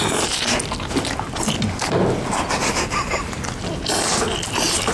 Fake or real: real